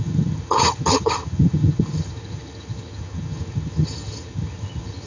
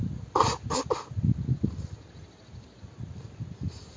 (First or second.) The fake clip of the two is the first